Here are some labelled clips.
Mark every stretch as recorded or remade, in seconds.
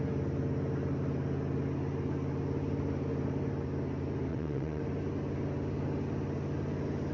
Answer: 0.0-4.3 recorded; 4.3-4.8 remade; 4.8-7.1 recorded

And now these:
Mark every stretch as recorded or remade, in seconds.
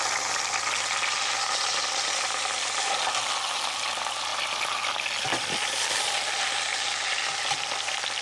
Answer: 0.0-4.3 recorded; 4.3-4.9 remade; 4.9-8.2 recorded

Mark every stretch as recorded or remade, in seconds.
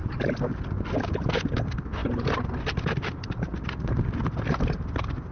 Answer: 0.0-5.3 recorded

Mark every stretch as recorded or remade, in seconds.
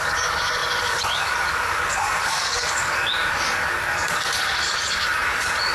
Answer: 0.0-5.7 remade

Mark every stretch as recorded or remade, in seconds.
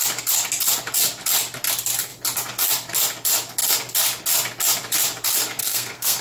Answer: 0.0-5.6 recorded; 5.6-6.2 remade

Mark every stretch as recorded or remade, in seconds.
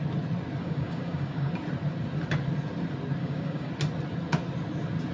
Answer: 0.0-0.6 recorded; 0.6-1.5 remade; 1.5-3.2 recorded; 3.2-3.7 remade; 3.7-5.1 recorded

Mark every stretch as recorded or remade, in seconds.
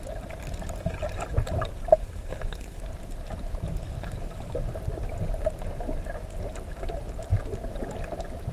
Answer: 0.0-2.0 recorded; 2.0-2.8 remade; 2.8-8.5 recorded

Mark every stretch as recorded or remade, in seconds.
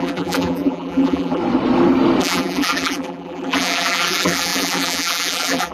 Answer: 0.0-1.4 remade; 1.4-2.2 recorded; 2.2-5.7 remade